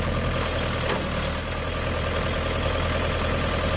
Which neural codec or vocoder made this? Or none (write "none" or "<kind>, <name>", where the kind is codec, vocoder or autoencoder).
none